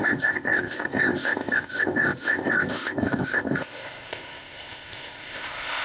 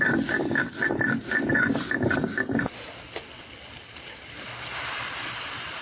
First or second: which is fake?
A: first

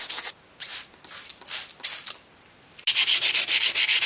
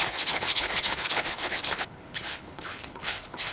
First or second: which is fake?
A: second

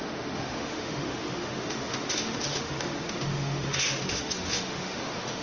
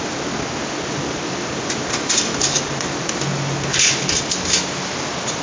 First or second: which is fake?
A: first